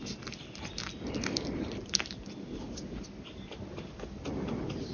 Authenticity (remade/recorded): recorded